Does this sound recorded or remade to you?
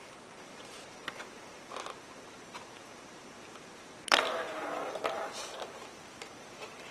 remade